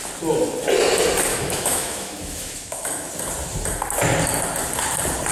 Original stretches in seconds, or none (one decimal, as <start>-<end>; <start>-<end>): 0.0-1.3; 3.1-5.3